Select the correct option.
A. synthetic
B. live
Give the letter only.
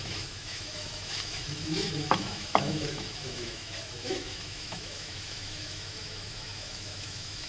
A